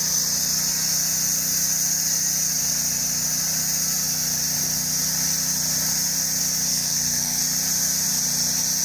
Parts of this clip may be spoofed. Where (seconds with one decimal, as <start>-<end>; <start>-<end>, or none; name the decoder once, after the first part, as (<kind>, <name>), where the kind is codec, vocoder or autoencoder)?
6.7-7.4 (codec, SNAC)